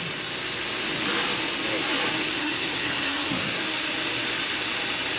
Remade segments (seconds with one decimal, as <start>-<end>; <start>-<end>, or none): 2.3-3.6